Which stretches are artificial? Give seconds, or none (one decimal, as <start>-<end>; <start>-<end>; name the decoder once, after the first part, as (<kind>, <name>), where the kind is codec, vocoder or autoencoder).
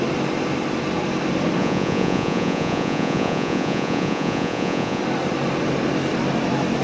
1.6-5.0 (vocoder, Vocos)